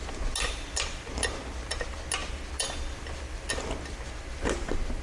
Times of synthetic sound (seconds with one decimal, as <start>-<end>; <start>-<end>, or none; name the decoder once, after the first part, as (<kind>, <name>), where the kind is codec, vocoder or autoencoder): none